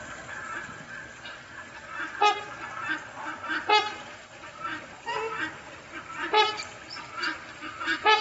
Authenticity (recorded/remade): recorded